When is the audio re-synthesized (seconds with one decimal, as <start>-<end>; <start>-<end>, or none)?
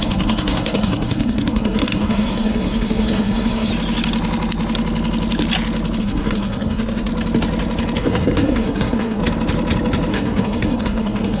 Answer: 0.0-3.7; 6.0-7.1; 8.0-9.2; 10.1-11.4